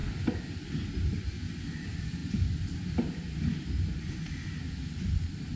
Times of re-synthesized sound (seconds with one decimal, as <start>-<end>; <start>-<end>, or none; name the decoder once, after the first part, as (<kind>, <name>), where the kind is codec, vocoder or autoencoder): none